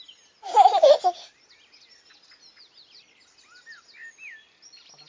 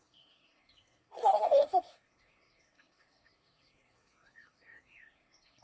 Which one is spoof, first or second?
second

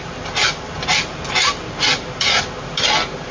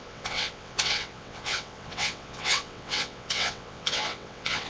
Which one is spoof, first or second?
second